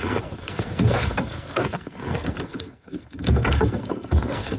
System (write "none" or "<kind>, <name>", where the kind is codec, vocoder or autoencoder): codec, SNAC